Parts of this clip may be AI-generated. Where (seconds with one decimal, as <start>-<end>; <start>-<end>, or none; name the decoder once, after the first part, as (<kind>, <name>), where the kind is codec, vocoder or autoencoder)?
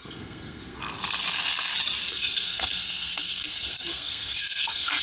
0.0-0.8 (codec, SNAC); 2.1-5.0